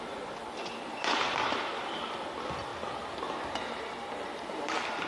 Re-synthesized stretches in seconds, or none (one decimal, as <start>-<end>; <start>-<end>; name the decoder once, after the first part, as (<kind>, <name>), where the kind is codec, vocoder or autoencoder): none